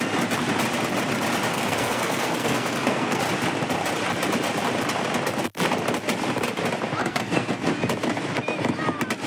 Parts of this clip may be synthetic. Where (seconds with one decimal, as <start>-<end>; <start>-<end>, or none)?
1.5-3.2; 7.0-7.7